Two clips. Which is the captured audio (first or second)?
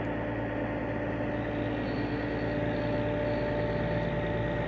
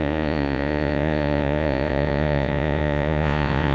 first